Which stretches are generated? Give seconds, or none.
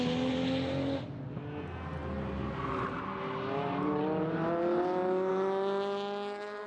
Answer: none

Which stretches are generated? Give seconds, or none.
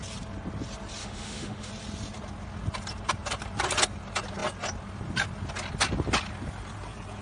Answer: 1.0-1.7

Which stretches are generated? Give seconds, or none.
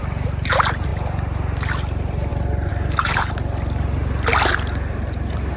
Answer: 2.7-3.3